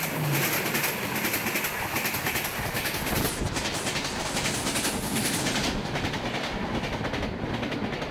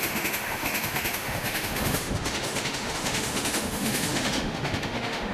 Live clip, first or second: first